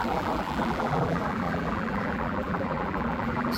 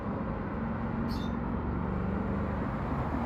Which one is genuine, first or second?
second